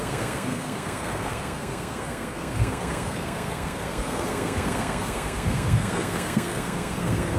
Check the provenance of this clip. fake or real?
fake